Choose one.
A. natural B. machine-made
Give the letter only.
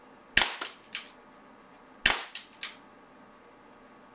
A